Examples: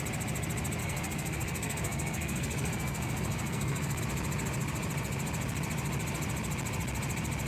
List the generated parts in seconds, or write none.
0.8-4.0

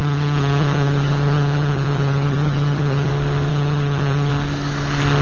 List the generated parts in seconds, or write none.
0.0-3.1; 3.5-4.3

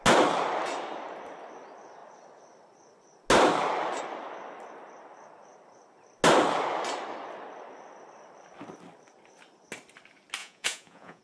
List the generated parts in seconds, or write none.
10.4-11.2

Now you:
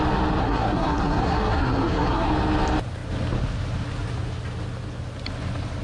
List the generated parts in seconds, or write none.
0.4-2.3

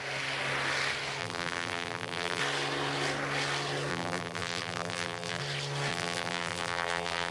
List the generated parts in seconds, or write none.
1.2-2.4; 3.9-5.4; 5.9-7.3